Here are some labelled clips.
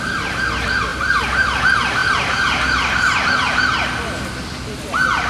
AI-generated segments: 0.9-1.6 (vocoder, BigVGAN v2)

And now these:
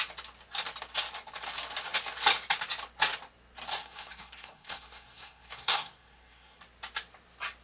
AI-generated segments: 3.8-6.6 (codec, SNAC)

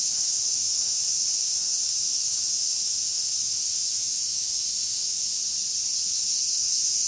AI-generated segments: 0.0-5.4 (autoencoder, DAC-VAE); 6.0-7.1